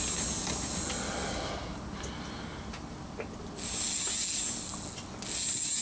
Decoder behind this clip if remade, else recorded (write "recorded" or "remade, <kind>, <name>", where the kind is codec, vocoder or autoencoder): recorded